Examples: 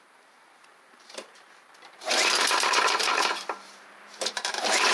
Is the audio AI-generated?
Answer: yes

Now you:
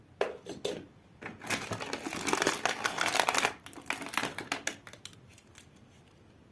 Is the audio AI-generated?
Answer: no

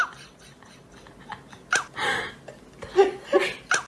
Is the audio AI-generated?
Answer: no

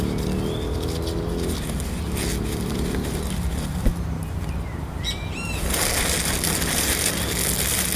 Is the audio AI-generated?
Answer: no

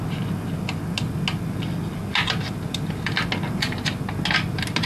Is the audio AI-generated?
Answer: no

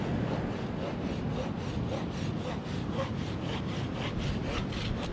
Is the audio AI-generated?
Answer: no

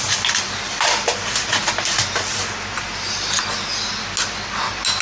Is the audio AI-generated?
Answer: no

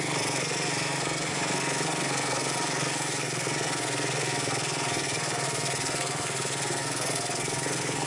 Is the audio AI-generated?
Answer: yes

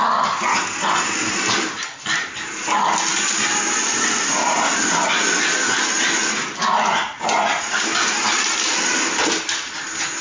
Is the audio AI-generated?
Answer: no